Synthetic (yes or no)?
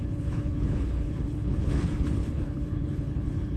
yes